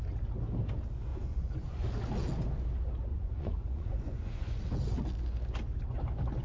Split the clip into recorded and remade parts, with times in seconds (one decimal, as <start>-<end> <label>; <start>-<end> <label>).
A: 0.0-1.1 recorded; 1.1-1.9 remade; 1.9-3.1 recorded; 3.1-4.6 remade; 4.6-6.4 recorded